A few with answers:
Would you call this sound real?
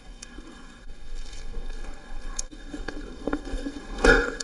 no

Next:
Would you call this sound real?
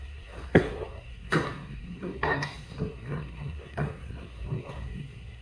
no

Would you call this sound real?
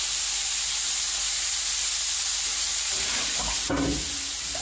yes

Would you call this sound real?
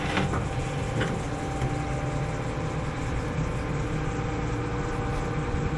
yes